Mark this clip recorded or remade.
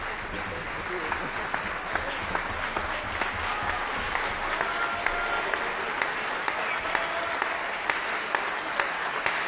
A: recorded